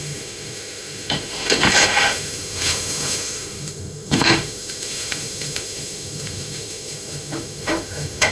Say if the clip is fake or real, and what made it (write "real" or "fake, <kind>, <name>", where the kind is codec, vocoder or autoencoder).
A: fake, autoencoder, DAC-VAE